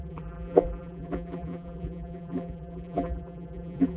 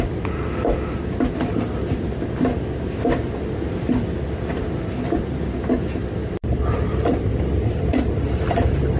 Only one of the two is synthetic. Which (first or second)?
first